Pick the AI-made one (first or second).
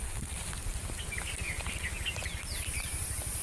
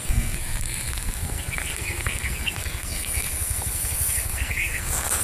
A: second